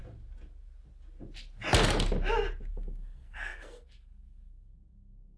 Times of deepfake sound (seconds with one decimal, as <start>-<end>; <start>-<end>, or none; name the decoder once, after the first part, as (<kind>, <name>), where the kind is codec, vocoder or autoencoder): 2.7-5.4 (codec, SNAC)